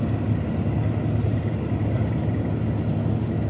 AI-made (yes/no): no